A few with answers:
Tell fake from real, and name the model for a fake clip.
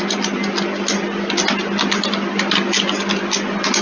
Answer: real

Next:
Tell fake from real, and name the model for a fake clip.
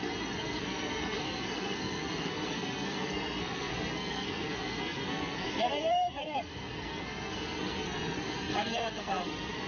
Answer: fake, codec, SNAC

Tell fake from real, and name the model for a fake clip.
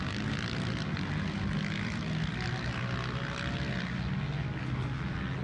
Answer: real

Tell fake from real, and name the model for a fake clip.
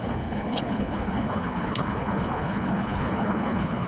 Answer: fake, codec, HILCodec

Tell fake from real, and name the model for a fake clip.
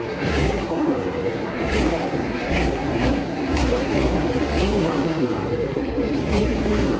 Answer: fake, codec, SNAC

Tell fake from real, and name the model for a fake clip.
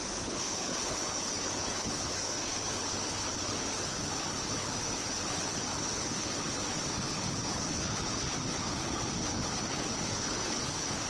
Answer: fake, codec, HILCodec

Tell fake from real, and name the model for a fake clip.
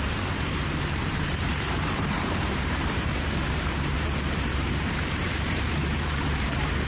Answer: fake, vocoder, BigVGAN v2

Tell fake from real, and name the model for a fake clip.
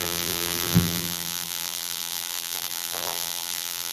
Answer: fake, vocoder, BigVGAN v2